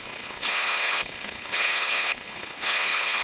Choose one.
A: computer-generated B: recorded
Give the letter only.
A